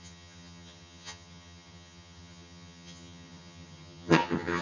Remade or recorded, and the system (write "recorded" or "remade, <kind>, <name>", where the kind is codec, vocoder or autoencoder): remade, vocoder, HiFi-GAN